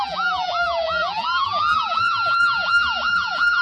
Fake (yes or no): yes